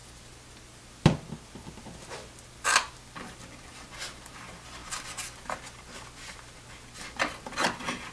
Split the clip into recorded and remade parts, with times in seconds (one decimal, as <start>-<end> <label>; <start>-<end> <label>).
0.0-8.1 recorded